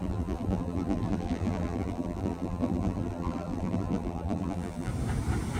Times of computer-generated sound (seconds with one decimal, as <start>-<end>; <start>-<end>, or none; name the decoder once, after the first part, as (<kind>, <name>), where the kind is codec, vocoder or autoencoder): 0.0-4.9 (vocoder, BigVGAN v2)